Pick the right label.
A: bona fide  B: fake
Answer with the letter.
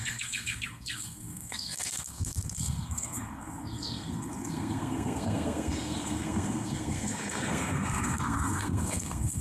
B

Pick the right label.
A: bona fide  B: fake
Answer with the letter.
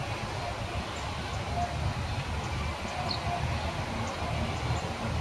A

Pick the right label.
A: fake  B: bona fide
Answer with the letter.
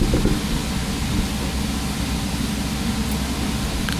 B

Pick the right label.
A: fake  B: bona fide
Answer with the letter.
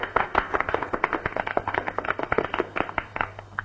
A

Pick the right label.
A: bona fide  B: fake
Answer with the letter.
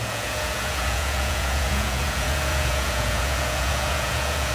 B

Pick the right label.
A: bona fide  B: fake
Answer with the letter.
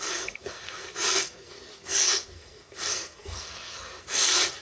B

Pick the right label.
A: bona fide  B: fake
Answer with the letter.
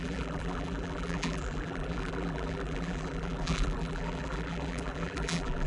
B